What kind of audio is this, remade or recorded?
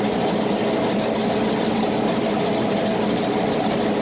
recorded